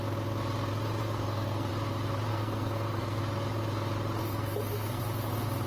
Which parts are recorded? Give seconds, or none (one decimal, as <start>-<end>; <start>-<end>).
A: 0.0-1.0; 1.7-2.3; 3.2-4.2; 5.0-5.7